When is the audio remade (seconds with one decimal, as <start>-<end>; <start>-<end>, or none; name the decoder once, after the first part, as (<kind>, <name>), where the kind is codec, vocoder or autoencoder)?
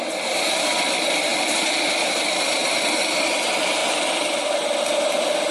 none